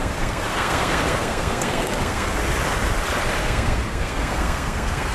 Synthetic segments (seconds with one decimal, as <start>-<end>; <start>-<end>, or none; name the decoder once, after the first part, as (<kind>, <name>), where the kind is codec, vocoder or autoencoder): 0.0-2.4 (codec, SNAC); 3.4-5.1